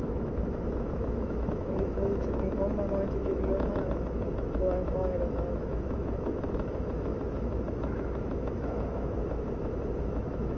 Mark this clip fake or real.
fake